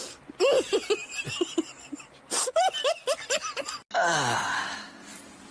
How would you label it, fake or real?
real